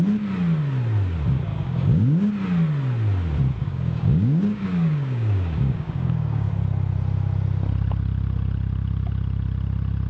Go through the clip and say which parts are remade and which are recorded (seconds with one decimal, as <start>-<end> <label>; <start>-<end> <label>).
0.0-1.5 recorded; 1.5-2.3 remade; 2.3-3.6 recorded; 3.6-6.5 remade; 6.5-10.1 recorded